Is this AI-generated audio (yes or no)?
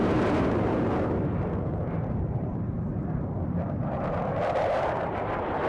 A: yes